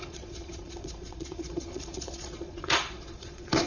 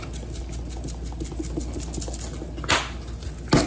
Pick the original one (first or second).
second